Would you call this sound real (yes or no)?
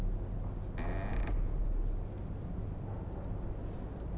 yes